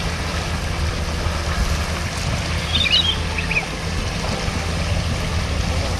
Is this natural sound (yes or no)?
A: yes